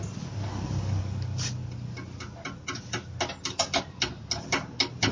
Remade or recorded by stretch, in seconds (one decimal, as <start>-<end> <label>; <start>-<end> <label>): 0.0-5.1 recorded

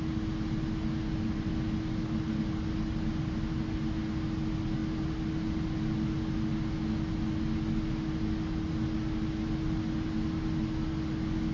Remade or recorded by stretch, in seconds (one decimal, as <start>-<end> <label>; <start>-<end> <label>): 0.0-11.5 recorded

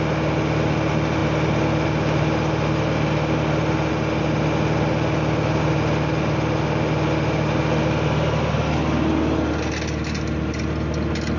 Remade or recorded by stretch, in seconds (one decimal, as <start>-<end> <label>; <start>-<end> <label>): 0.0-11.4 recorded

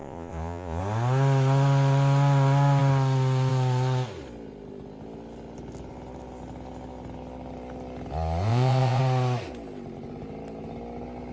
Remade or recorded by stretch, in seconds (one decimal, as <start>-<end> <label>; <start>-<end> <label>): 0.0-0.8 remade; 0.8-8.5 recorded; 8.5-9.0 remade; 9.0-11.3 recorded

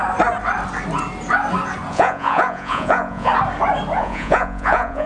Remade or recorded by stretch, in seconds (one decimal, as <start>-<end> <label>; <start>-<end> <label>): 0.0-1.9 recorded; 1.9-3.3 remade; 3.3-4.0 recorded; 4.0-5.1 remade

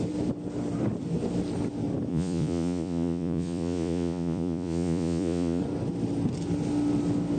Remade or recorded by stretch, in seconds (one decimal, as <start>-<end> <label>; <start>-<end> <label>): 0.0-2.1 recorded; 2.1-5.6 remade; 5.6-7.4 recorded

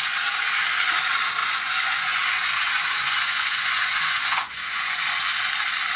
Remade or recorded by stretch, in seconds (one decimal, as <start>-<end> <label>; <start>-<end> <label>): 0.0-1.4 recorded; 1.4-5.0 remade; 5.0-6.0 recorded

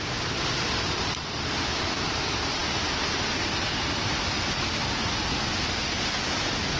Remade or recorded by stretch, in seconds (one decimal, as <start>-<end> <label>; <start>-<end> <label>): 0.0-6.8 recorded